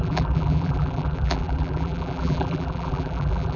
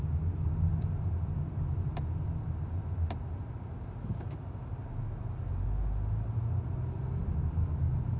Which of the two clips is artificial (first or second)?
first